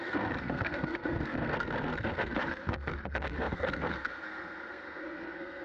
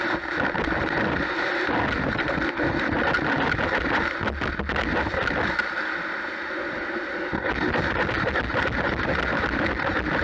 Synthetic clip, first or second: first